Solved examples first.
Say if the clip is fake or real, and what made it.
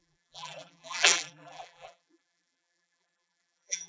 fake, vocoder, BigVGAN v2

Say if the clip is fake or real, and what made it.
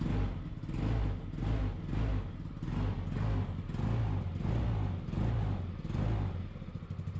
real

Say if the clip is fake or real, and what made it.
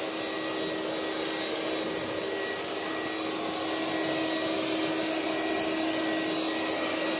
real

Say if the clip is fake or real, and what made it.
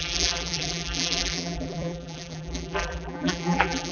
fake, vocoder, BigVGAN v2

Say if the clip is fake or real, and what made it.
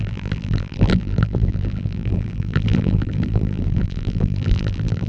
fake, vocoder, BigVGAN v2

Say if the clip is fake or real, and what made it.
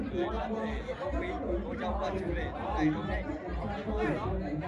real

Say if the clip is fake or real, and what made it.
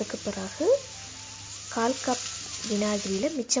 real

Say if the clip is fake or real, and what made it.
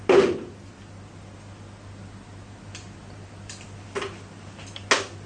real